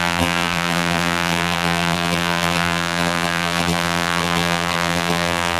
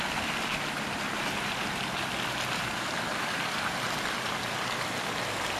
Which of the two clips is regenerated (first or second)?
first